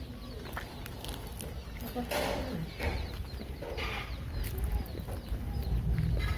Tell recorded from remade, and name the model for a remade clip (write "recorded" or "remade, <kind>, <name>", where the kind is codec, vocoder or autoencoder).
recorded